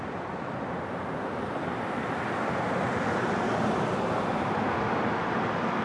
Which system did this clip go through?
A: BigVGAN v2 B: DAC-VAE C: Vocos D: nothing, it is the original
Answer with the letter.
A